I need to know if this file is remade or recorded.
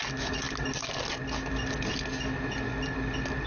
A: recorded